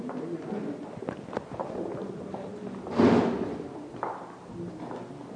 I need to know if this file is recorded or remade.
recorded